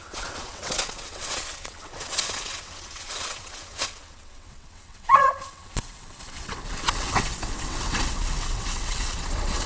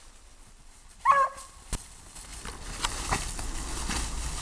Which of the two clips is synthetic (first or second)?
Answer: first